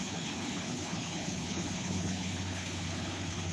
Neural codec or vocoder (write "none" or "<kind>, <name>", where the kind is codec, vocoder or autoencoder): codec, HILCodec